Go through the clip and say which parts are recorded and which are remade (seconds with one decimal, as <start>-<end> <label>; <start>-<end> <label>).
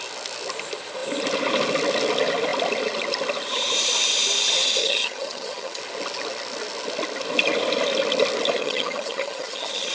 0.0-4.8 recorded; 4.8-5.8 remade; 5.8-8.6 recorded; 8.6-9.9 remade